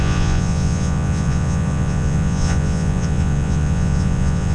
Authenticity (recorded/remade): remade